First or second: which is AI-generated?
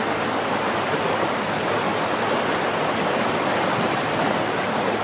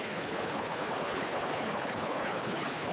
second